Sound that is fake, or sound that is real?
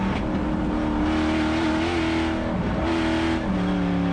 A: real